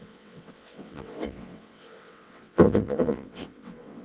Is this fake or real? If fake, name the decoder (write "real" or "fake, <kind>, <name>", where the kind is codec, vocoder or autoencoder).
fake, vocoder, WaveNeXt